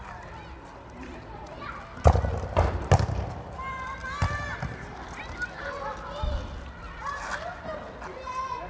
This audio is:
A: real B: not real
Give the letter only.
A